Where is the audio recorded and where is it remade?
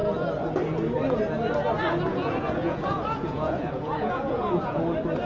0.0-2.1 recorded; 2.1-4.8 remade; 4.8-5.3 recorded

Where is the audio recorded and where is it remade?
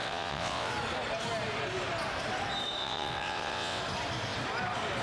0.0-0.7 remade; 0.7-2.8 recorded; 2.8-3.8 remade; 3.8-5.0 recorded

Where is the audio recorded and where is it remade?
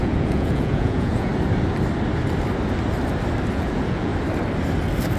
0.0-1.3 remade; 1.3-3.5 recorded; 3.5-4.1 remade; 4.1-5.2 recorded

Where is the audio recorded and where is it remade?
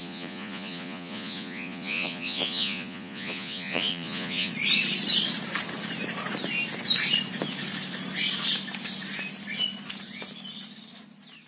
0.0-4.5 remade; 4.5-11.5 recorded